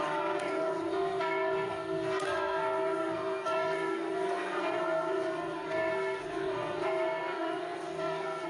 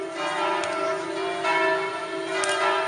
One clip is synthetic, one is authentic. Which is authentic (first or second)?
second